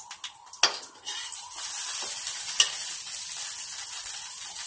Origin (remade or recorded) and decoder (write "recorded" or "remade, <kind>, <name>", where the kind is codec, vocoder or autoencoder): recorded